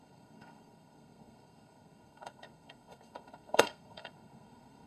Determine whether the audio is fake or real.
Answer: fake